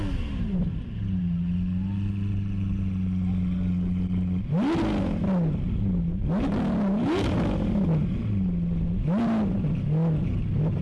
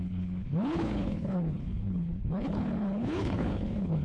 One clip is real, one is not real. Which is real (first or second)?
first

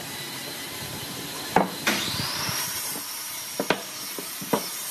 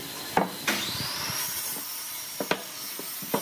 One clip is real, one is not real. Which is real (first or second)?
second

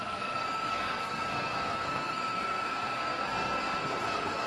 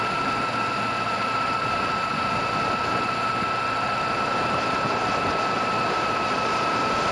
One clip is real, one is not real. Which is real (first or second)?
second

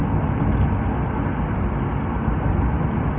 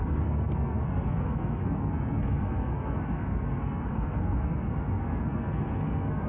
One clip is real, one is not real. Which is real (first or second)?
first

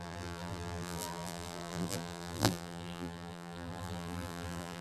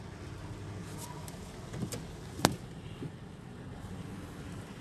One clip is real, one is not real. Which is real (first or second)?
second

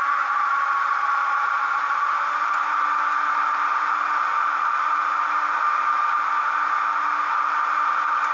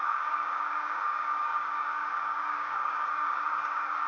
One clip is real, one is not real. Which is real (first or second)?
first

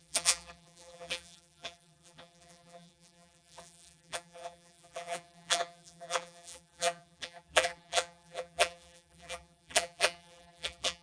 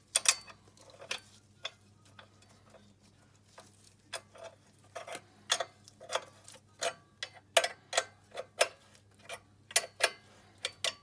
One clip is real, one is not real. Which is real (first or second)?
second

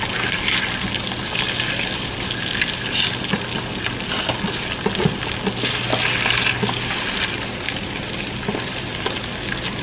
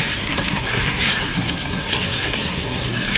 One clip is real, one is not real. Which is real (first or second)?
first